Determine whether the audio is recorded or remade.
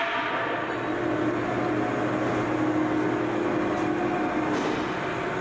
recorded